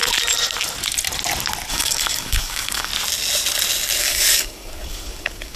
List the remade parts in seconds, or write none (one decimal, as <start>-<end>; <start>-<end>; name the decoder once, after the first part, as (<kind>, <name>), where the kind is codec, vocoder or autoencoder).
1.7-2.9 (codec, DAC); 4.0-5.6

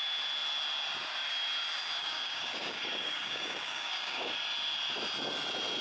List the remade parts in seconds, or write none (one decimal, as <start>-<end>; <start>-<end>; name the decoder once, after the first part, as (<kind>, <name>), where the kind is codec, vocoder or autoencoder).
2.0-4.3 (codec, DAC)

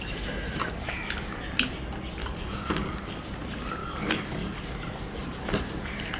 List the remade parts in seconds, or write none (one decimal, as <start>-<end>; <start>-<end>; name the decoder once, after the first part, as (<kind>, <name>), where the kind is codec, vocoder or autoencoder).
2.2-3.2 (codec, DAC); 3.8-4.6

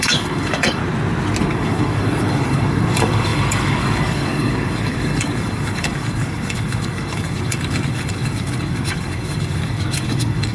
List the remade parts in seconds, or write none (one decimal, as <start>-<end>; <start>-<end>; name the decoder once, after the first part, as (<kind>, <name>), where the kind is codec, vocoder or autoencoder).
0.0-0.8 (codec, DAC); 1.4-10.5

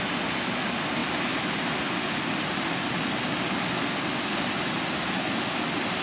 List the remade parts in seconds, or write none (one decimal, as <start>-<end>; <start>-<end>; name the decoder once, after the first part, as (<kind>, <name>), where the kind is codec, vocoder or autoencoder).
none

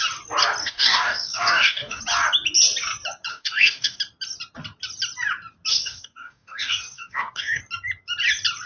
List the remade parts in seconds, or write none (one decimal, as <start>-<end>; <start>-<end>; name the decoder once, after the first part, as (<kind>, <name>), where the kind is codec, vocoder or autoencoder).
0.6-2.0 (codec, DAC); 3.3-4.0; 5.7-7.6

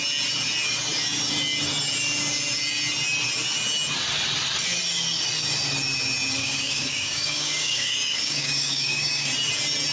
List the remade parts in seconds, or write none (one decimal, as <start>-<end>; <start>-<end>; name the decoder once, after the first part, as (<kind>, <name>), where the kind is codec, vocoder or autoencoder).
6.4-9.3 (codec, DAC)